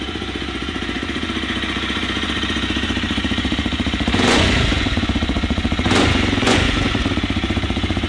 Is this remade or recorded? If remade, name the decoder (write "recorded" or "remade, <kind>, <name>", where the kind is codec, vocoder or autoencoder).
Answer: remade, vocoder, Vocos